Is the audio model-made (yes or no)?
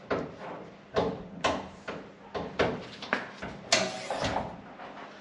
no